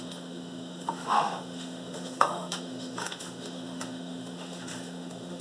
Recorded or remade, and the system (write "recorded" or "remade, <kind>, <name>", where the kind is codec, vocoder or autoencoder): remade, autoencoder, DAC-VAE